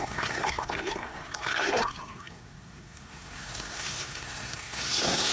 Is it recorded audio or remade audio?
remade